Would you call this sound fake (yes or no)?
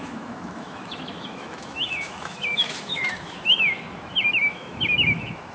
yes